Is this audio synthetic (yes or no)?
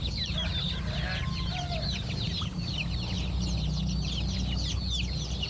no